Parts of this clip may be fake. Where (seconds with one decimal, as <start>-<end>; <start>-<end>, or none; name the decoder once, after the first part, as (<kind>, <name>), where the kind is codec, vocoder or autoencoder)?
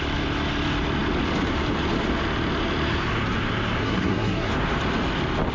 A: 3.8-4.5 (codec, SNAC)